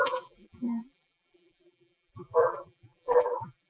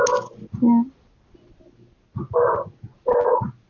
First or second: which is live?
second